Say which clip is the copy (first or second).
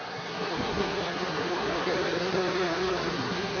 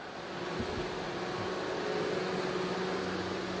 first